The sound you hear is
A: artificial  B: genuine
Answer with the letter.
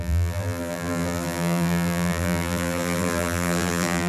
A